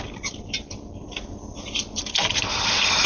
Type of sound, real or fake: real